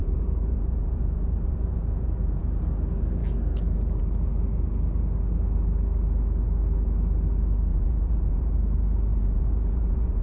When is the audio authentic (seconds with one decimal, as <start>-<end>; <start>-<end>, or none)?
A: 2.6-7.7; 8.5-9.1

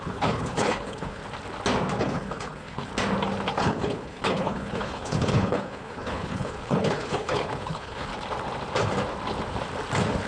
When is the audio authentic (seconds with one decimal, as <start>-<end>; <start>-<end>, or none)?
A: 1.2-2.0; 2.9-3.6; 8.1-10.3

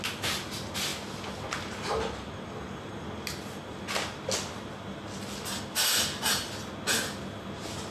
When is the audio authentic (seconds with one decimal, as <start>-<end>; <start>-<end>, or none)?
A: 0.0-7.9

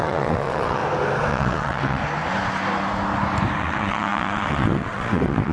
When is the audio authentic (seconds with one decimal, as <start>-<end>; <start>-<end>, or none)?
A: 0.8-1.3; 2.0-3.6

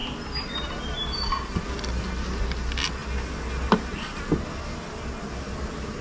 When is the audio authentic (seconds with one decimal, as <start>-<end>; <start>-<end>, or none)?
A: 0.0-6.0

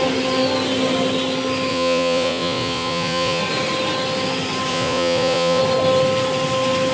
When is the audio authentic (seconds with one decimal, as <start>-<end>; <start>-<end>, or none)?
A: 0.0-1.7; 3.4-4.7; 5.6-6.9